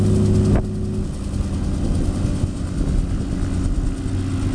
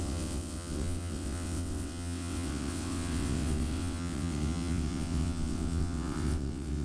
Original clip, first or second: first